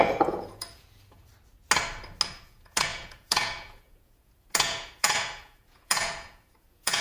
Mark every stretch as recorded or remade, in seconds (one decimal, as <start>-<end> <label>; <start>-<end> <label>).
0.0-1.3 remade; 1.3-2.3 recorded; 2.3-7.0 remade